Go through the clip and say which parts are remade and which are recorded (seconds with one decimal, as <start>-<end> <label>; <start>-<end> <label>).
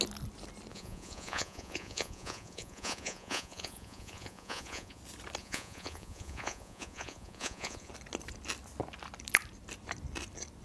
0.0-0.7 recorded; 0.7-5.0 remade; 5.0-5.4 recorded; 5.4-7.9 remade; 7.9-10.6 recorded